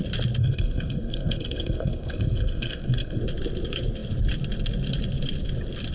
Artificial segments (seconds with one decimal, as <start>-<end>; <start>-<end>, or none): 0.4-3.2